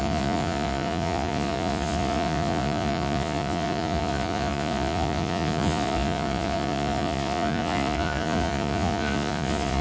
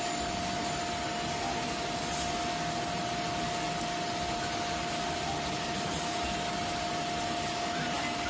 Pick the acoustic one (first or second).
second